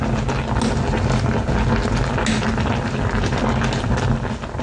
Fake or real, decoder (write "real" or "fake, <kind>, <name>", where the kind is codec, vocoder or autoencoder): real